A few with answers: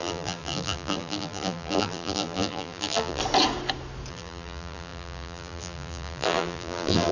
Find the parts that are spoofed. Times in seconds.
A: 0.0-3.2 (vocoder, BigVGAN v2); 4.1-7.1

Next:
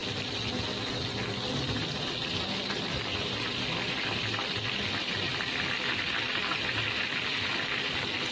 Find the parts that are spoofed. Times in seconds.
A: 0.0-1.1 (vocoder, BigVGAN v2); 3.1-6.2

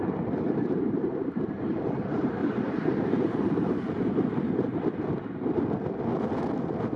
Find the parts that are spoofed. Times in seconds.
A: 0.0-2.4 (vocoder, BigVGAN v2); 6.6-7.0

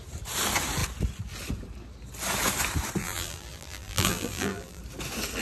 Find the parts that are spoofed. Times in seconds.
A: 3.0-4.8 (vocoder, BigVGAN v2)

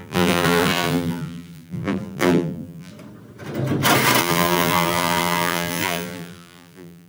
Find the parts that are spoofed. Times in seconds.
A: 0.0-2.9 (vocoder, BigVGAN v2); 4.2-7.1

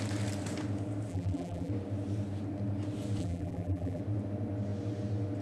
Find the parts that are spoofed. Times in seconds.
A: 1.1-1.7 (vocoder, BigVGAN v2); 3.2-4.0

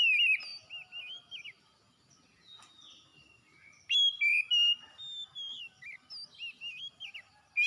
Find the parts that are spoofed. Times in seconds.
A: none